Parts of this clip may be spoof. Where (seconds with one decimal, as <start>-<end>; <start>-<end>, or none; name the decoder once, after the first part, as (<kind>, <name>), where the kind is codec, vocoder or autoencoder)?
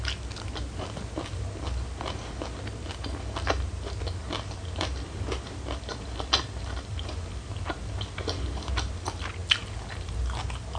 4.2-8.7 (vocoder, BigVGAN v2)